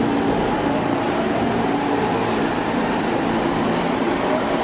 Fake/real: fake